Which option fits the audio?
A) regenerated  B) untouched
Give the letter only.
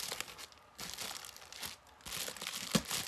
B